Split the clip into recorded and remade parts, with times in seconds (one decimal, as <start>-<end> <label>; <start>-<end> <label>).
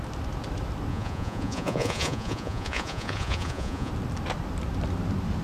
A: 0.0-0.9 recorded; 0.9-3.9 remade; 3.9-5.4 recorded